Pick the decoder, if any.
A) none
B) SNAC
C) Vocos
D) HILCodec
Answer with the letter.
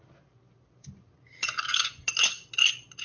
A